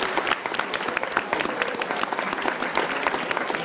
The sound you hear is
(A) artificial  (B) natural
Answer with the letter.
B